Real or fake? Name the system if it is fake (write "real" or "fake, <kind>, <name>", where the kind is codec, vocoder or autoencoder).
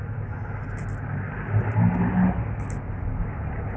real